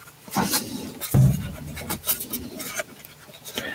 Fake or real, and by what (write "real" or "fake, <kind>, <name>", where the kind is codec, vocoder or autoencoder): real